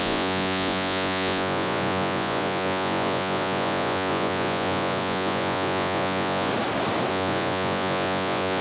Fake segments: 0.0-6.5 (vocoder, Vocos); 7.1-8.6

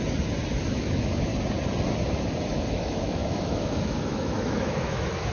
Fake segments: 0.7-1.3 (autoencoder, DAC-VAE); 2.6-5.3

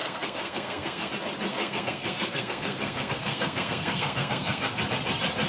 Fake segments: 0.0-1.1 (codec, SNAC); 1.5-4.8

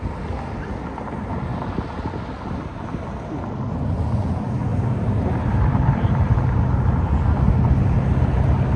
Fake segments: 4.7-6.6 (vocoder, BigVGAN v2)

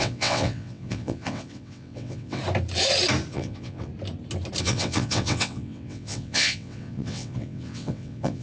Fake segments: 0.0-2.4 (vocoder, WaveNeXt); 3.3-3.9; 4.6-8.4

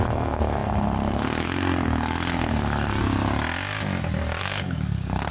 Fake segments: 0.0-3.0 (codec, SNAC); 4.4-5.3